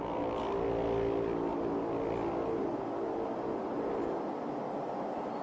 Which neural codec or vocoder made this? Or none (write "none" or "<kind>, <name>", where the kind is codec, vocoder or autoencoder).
none